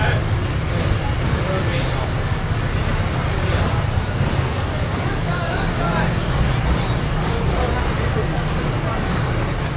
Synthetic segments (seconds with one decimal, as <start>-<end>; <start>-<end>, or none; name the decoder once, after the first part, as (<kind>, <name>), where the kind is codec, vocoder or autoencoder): 5.3-5.9 (codec, DAC)